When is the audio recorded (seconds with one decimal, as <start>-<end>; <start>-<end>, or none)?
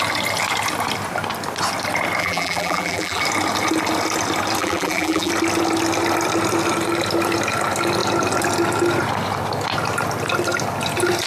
0.0-2.2; 3.2-4.6; 5.3-11.3